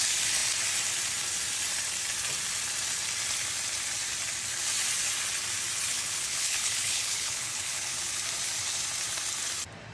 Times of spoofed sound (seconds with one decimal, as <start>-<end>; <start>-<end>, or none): 5.9-8.1